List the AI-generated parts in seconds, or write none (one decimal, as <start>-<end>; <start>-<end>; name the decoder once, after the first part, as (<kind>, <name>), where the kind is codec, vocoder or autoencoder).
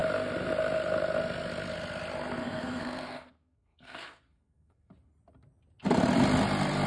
2.4-4.9 (codec, SNAC)